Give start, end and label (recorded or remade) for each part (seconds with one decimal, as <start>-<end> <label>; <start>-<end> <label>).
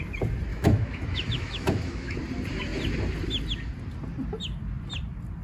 0.0-0.5 recorded; 0.5-2.2 remade; 2.2-5.4 recorded